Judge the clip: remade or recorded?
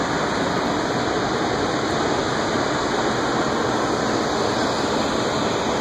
recorded